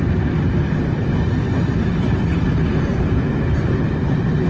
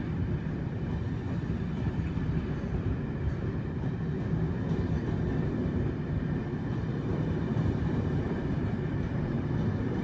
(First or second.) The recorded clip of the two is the first